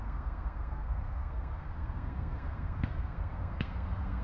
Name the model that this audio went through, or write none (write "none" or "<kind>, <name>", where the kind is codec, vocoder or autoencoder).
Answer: codec, SNAC